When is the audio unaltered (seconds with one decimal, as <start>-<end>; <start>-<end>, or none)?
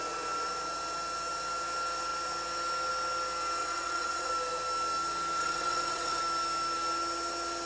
0.0-3.6; 4.3-5.4; 6.2-7.7